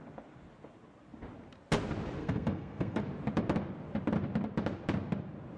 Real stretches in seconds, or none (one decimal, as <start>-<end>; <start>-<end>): 0.0-2.2; 3.0-5.6